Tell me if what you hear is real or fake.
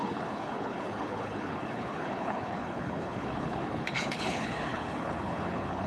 fake